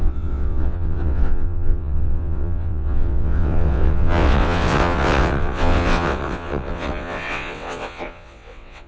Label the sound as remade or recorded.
remade